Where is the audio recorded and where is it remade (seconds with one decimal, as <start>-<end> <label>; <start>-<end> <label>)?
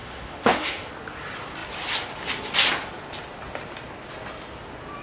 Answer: 0.0-0.9 remade; 0.9-5.0 recorded